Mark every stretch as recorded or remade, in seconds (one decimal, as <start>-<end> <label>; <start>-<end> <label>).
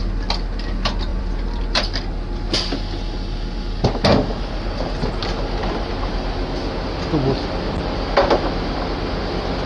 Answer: 0.0-1.1 recorded; 1.1-2.1 remade; 2.1-9.7 recorded